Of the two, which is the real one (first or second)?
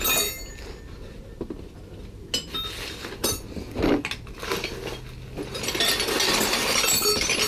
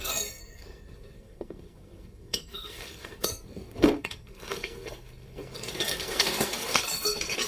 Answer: first